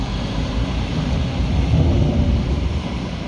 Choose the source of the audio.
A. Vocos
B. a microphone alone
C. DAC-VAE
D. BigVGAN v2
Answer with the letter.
D